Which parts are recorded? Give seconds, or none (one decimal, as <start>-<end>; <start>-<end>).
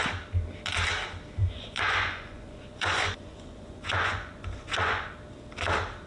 0.0-1.4; 5.1-6.1